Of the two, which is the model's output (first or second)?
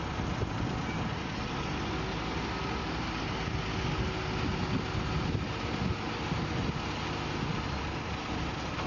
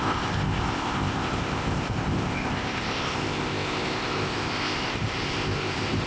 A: second